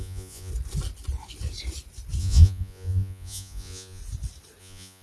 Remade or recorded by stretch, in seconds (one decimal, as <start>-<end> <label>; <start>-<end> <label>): 0.0-0.5 remade; 0.5-2.2 recorded; 2.2-4.0 remade; 4.0-4.6 recorded; 4.6-5.0 remade

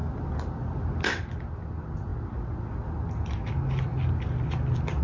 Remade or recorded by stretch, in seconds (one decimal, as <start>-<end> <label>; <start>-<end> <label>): 0.0-5.0 recorded

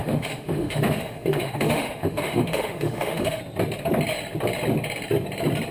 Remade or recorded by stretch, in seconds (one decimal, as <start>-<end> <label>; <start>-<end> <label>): 0.0-3.4 remade; 3.4-5.7 recorded

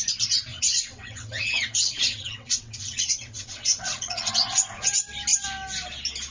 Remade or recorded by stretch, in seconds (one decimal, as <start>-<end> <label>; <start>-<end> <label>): 0.0-0.5 recorded; 0.5-4.3 remade; 4.3-6.3 recorded

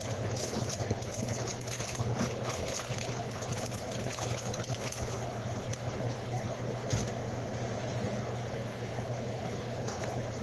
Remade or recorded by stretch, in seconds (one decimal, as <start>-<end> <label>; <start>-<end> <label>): 0.0-7.0 remade; 7.0-7.8 recorded; 7.8-10.4 remade

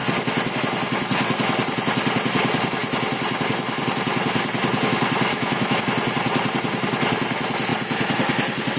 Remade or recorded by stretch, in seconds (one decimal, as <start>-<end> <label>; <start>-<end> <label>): 0.0-5.3 recorded; 5.3-5.8 remade; 5.8-8.8 recorded

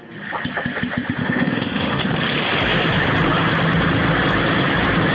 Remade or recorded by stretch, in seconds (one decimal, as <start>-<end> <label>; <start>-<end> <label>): 0.0-1.2 recorded; 1.2-2.0 remade; 2.0-5.1 recorded